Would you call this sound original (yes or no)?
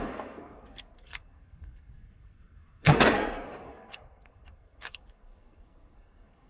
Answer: no